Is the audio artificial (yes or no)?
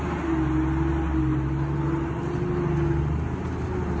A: no